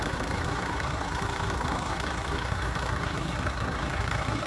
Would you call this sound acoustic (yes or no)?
no